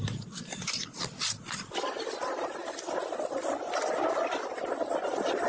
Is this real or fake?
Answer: real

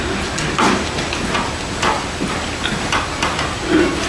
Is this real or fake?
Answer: real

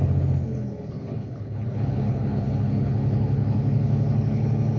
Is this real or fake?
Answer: fake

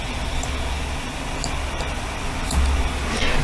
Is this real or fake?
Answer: real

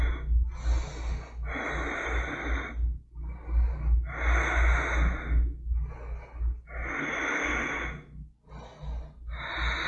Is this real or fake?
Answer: real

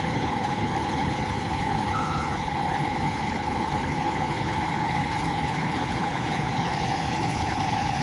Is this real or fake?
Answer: fake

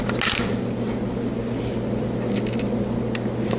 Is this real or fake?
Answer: real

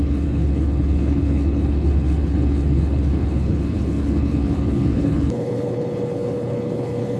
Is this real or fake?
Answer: fake